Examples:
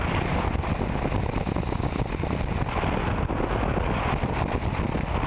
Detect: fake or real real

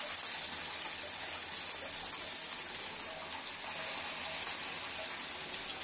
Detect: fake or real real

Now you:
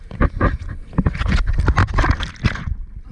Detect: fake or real real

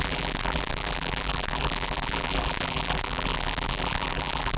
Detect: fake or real fake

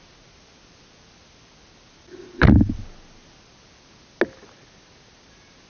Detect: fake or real real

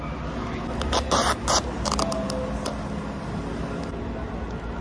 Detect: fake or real real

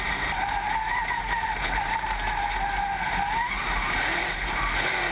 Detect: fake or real real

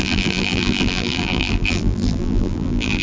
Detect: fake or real fake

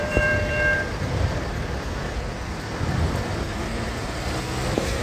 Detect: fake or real fake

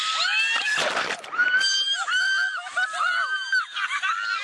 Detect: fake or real real